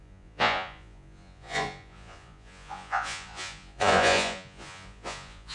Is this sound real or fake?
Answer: fake